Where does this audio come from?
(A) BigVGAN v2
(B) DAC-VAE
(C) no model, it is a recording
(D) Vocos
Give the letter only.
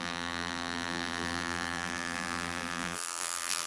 A